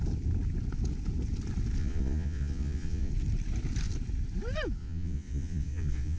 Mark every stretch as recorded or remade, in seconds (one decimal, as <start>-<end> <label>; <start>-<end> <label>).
0.0-1.8 recorded; 1.8-3.1 remade; 3.1-4.8 recorded; 4.8-6.2 remade